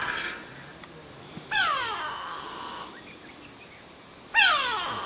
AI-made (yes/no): no